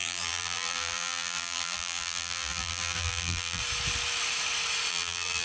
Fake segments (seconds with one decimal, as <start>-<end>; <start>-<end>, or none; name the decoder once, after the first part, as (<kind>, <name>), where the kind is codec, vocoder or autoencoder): 0.0-3.6 (vocoder, BigVGAN v2); 4.9-5.4